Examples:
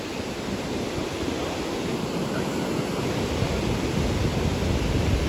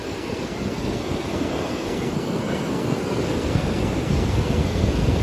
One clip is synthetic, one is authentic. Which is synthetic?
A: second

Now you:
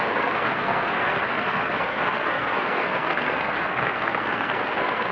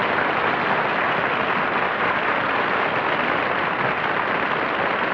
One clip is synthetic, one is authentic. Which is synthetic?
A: first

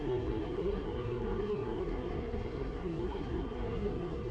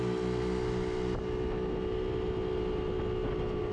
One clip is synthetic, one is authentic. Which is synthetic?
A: first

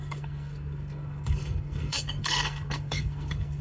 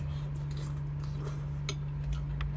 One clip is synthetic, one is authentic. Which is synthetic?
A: first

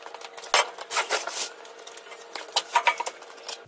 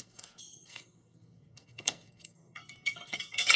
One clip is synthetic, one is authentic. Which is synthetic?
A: second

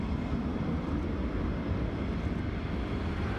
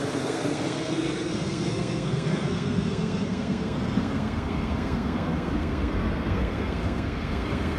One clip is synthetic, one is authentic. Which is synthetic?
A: second